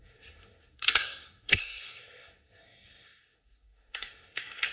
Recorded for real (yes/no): no